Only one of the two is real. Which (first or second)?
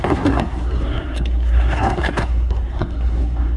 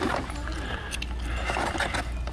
second